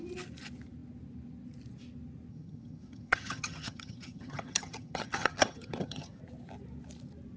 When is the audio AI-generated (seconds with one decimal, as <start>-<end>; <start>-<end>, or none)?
2.3-6.2